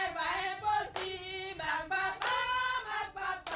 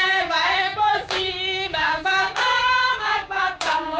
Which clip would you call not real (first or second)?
second